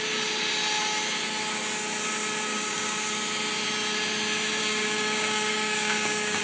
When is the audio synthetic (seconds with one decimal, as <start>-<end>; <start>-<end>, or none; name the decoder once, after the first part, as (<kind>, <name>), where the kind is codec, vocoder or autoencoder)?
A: 2.5-3.1 (codec, DAC); 4.6-6.4